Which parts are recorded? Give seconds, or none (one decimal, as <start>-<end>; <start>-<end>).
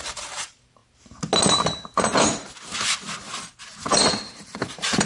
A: 0.8-3.9